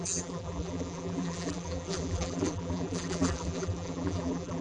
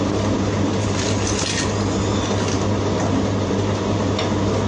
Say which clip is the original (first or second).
second